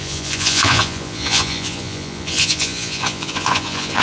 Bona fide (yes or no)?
no